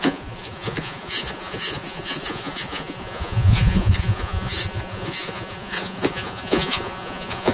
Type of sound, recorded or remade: remade